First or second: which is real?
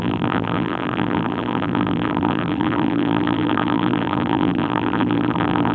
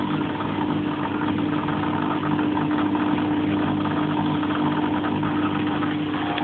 second